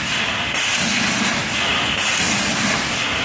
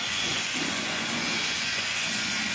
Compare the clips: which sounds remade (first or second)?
second